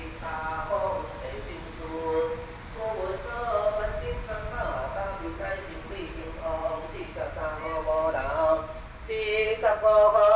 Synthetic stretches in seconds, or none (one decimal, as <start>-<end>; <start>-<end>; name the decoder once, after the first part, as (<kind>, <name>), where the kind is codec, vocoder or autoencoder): 6.6-7.3 (vocoder, Vocos)